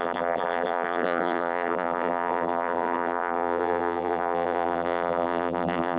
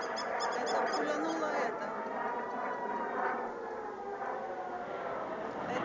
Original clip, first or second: second